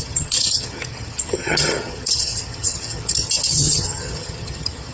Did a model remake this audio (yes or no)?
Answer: yes